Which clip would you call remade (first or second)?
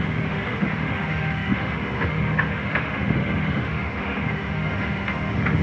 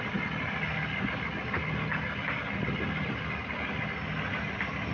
first